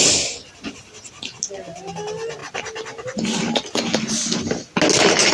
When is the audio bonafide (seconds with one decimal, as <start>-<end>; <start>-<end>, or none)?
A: 0.0-5.3